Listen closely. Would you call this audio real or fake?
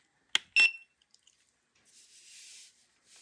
real